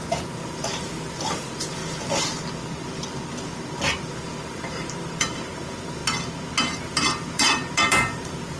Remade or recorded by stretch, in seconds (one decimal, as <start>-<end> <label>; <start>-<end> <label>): 0.0-1.8 remade; 1.8-4.4 recorded; 4.4-6.0 remade; 6.0-6.8 recorded; 6.8-8.6 remade